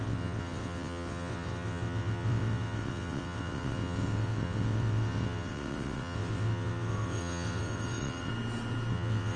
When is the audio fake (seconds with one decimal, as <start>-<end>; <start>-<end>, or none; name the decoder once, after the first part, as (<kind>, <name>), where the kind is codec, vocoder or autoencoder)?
0.0-8.3 (vocoder, WaveNeXt); 8.9-9.4